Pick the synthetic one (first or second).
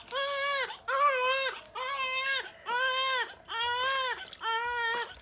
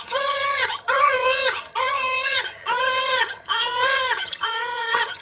second